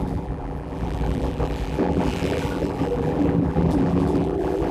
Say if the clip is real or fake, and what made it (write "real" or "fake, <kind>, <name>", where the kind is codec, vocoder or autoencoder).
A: fake, vocoder, BigVGAN v2